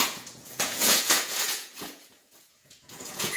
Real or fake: fake